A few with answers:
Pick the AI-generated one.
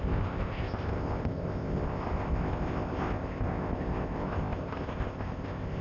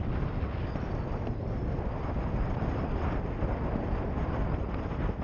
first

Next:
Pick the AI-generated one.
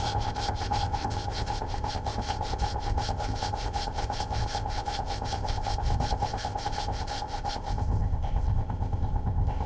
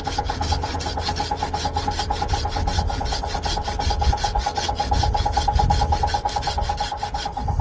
first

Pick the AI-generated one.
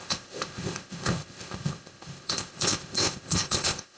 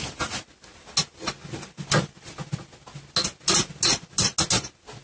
first